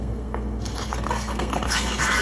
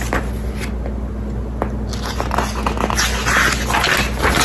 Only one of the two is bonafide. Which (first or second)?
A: second